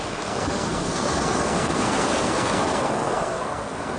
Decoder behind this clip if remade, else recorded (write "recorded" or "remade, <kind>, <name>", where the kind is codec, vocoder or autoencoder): remade, codec, SNAC